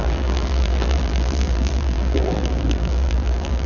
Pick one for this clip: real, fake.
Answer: fake